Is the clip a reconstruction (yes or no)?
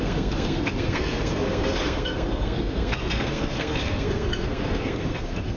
yes